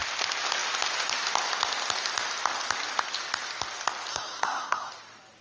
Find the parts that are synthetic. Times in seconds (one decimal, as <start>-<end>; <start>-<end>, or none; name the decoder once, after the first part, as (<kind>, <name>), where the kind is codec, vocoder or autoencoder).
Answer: 4.1-4.9 (codec, SNAC)